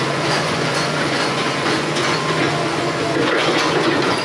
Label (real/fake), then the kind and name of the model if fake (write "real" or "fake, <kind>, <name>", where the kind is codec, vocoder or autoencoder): fake, vocoder, Vocos